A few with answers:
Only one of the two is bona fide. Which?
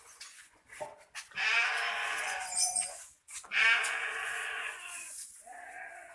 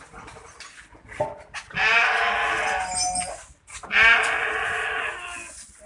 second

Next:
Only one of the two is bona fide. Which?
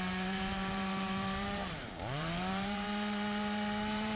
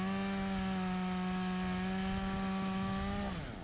second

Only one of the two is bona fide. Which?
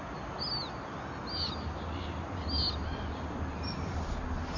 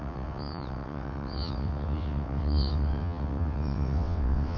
first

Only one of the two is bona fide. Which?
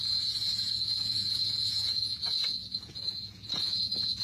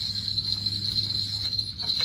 second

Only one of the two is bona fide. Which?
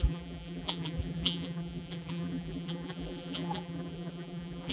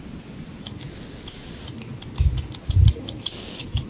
second